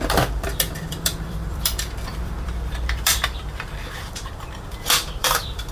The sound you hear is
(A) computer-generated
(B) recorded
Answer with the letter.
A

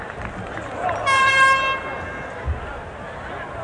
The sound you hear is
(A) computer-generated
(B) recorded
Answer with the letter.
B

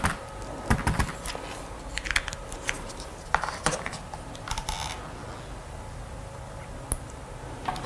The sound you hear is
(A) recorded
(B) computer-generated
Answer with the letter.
A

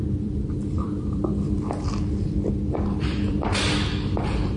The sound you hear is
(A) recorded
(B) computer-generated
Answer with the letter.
B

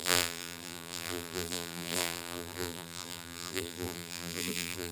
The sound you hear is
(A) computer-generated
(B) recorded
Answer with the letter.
A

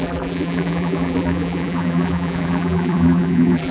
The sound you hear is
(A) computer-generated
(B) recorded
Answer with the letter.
A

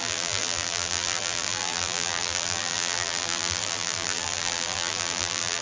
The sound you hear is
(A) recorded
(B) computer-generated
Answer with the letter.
B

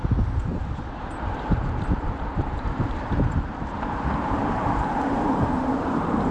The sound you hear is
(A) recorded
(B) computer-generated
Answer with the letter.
B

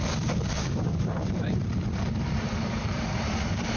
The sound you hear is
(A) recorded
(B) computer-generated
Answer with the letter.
B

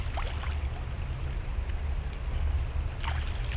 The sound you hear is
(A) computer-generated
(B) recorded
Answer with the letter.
B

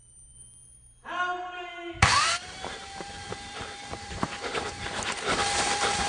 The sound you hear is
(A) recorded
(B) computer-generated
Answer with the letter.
B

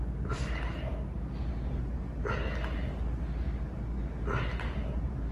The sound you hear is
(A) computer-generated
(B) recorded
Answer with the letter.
B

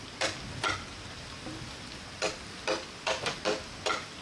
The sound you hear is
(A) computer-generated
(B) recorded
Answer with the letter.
A